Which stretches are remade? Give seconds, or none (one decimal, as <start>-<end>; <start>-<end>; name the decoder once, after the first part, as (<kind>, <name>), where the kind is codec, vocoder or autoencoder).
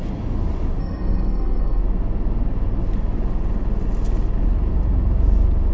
0.8-1.8 (codec, SNAC)